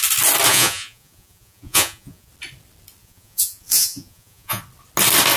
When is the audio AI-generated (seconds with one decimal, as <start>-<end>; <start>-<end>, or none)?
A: 0.5-2.3; 3.0-4.6